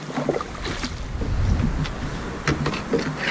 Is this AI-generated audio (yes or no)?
no